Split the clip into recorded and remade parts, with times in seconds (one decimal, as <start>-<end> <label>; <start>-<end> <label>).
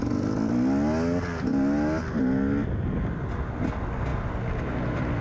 0.0-5.2 recorded